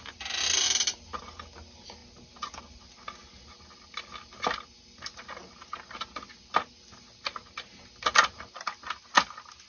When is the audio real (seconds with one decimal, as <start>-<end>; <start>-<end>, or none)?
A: 0.0-9.7